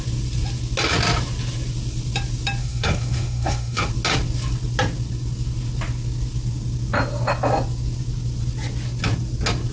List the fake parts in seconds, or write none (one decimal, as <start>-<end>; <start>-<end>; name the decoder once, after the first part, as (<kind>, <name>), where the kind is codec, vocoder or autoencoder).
2.6-3.9 (codec, SNAC)